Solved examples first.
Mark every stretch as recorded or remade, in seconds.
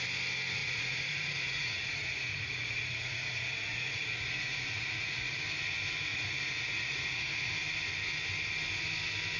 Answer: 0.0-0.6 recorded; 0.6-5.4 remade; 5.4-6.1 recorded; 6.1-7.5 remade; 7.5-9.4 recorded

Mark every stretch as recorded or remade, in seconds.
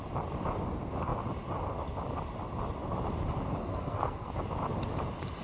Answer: 0.0-3.6 recorded; 3.6-4.3 remade; 4.3-5.4 recorded